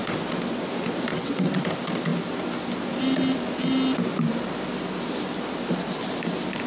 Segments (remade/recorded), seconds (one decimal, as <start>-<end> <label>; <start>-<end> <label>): 0.0-1.1 recorded; 1.1-1.6 remade; 1.6-6.7 recorded